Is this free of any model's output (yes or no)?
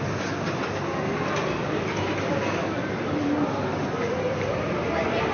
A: yes